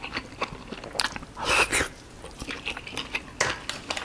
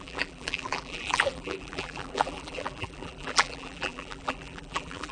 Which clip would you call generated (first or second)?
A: second